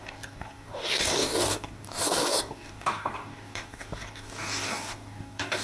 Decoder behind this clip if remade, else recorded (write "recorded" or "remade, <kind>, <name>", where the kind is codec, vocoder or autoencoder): remade, codec, DAC